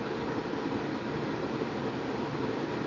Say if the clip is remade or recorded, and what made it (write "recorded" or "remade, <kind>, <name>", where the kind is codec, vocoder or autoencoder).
recorded